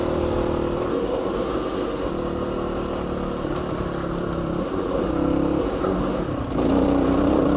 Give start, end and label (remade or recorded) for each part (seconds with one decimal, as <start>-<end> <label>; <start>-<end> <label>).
0.0-0.9 recorded; 0.9-2.1 remade; 2.1-4.6 recorded; 4.6-5.1 remade; 5.1-5.6 recorded; 5.6-6.2 remade; 6.2-7.6 recorded